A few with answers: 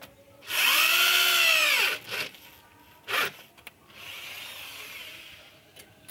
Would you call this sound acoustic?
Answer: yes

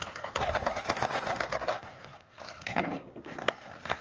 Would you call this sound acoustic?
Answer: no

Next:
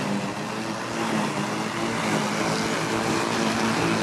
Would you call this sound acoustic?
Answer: yes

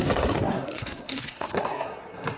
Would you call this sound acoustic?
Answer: no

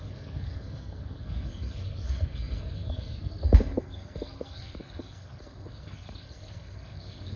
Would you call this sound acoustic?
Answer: no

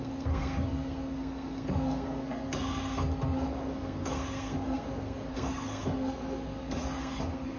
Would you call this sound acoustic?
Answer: no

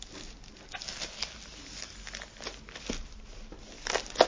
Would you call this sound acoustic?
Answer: yes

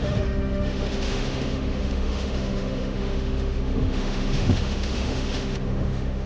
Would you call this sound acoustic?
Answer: no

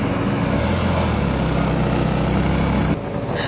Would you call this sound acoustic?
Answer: yes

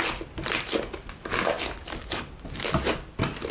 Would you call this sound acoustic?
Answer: yes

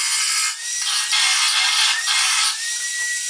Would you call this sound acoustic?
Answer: yes